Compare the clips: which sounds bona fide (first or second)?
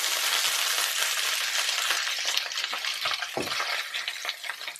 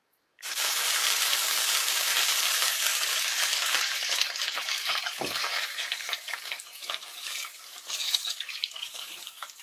first